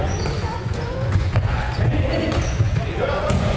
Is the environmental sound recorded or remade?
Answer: remade